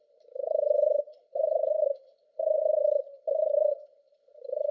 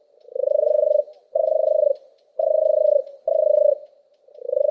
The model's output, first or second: first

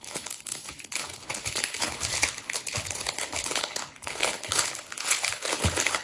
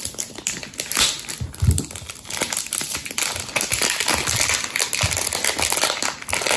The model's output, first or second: first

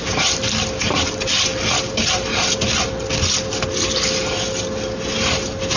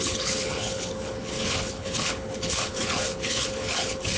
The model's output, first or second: second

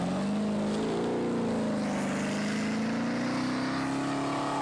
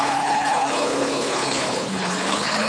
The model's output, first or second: second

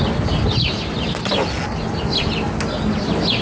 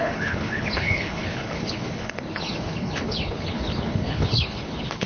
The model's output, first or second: second